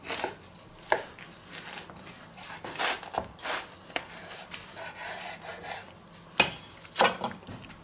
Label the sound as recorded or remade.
recorded